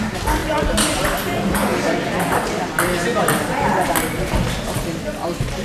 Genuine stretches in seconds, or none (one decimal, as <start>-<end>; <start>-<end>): 0.0-5.6